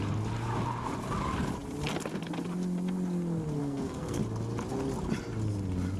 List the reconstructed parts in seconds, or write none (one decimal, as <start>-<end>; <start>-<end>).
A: 3.6-4.2